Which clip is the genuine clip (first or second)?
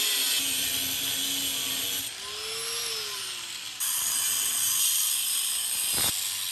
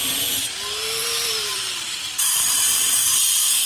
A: first